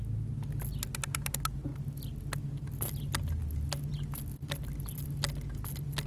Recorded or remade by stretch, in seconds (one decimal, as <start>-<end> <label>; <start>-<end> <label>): 0.0-6.1 recorded